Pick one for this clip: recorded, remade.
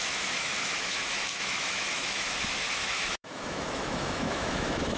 remade